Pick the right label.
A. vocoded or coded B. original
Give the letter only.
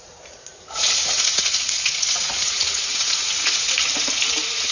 A